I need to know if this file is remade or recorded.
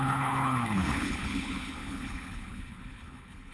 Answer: remade